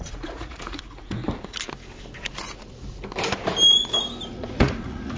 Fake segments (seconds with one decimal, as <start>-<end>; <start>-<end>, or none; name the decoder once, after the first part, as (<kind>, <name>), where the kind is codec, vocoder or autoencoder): 0.0-1.2 (vocoder, Vocos); 4.3-5.2